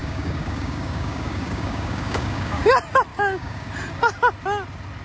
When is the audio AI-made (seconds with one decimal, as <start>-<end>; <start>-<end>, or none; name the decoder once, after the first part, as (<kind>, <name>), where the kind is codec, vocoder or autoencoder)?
0.0-2.7 (codec, DAC); 3.1-3.7